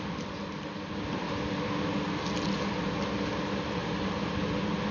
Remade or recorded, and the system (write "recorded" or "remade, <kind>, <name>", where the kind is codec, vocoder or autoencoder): recorded